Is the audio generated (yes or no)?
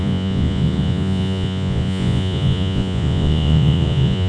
yes